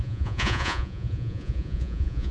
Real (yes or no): no